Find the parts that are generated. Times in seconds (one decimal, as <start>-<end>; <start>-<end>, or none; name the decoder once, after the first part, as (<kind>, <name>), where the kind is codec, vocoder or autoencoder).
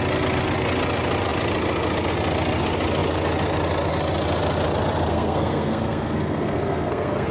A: 5.1-7.3 (codec, SNAC)